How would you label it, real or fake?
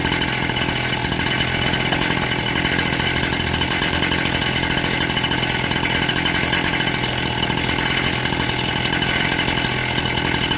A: real